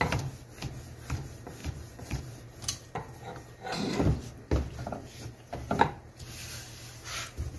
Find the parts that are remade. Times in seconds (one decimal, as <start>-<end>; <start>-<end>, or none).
1.6-2.2